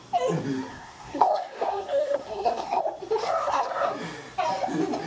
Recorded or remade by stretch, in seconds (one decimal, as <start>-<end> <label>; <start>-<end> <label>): 0.0-0.7 recorded; 0.7-2.8 remade; 2.8-3.2 recorded; 3.2-3.9 remade; 3.9-5.1 recorded